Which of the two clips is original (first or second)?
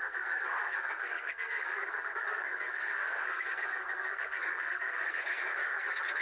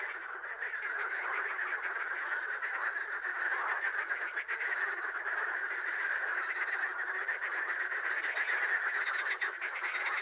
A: second